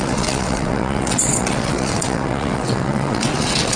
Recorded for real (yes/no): no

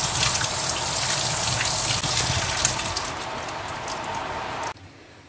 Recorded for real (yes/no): yes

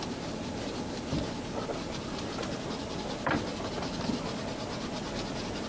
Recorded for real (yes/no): yes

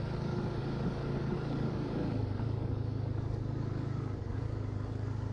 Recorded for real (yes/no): no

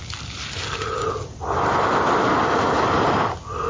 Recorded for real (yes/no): yes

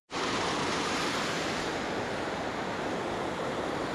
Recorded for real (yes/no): yes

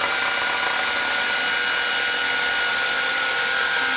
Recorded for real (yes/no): yes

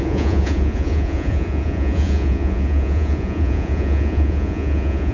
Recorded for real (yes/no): no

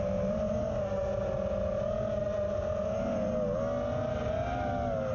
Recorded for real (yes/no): yes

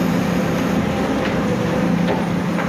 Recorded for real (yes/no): no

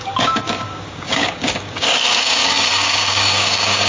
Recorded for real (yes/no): no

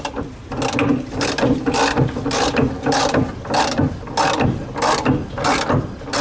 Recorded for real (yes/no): yes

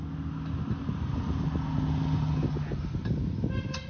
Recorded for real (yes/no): yes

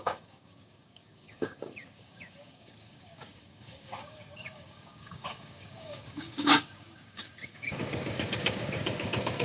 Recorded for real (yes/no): no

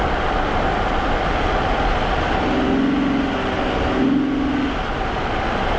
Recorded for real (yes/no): yes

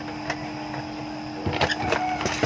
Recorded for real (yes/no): yes